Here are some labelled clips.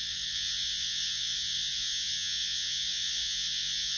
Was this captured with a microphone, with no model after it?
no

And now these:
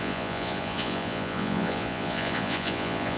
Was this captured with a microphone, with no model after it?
no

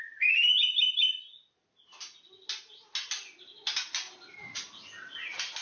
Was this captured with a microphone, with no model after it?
yes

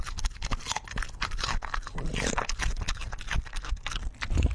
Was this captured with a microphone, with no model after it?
yes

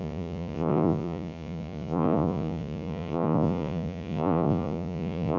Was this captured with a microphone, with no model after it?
no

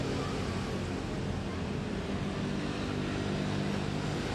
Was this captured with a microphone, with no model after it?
yes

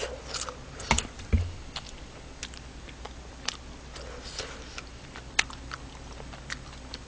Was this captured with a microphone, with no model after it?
yes